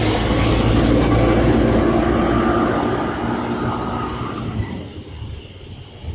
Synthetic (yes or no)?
no